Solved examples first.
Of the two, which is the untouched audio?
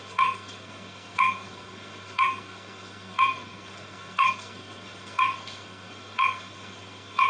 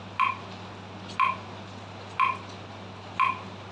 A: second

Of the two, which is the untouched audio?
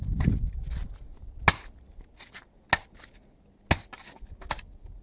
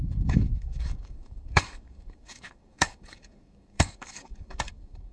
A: first